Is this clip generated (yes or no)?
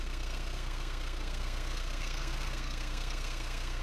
yes